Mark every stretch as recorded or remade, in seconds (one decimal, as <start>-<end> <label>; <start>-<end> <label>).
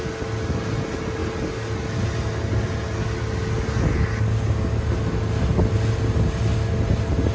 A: 0.0-7.3 recorded